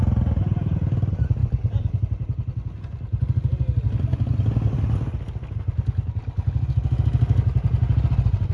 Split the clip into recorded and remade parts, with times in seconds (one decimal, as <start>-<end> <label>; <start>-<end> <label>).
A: 0.0-8.5 recorded